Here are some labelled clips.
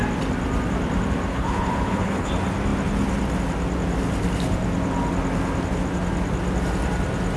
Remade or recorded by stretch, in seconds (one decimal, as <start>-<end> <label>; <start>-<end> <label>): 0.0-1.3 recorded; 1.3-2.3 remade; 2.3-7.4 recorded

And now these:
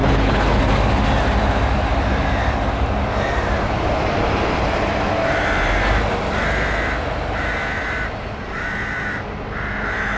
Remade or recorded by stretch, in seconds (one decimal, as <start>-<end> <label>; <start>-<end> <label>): 0.0-0.6 remade; 0.6-10.2 recorded

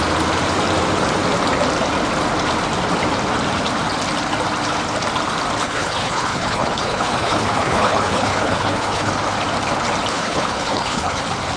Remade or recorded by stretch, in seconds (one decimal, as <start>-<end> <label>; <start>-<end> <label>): 0.0-5.6 recorded; 5.6-9.1 remade; 9.1-10.1 recorded; 10.1-11.2 remade; 11.2-11.6 recorded

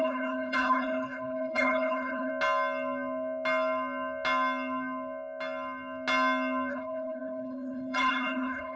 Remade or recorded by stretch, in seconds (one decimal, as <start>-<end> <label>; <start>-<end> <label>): 0.0-2.3 remade; 2.3-6.7 recorded; 6.7-8.8 remade

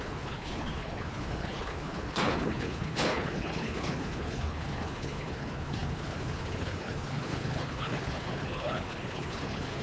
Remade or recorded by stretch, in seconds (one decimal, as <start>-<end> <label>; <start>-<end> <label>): 0.0-9.8 remade

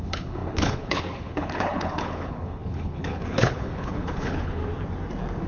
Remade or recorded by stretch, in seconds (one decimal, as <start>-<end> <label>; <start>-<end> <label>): 0.0-4.6 remade; 4.6-5.5 recorded